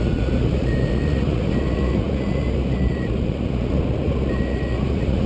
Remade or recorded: remade